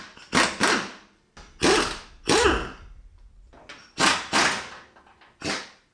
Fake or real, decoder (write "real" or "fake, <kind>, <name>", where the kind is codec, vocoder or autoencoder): real